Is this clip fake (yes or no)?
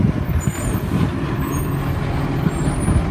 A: no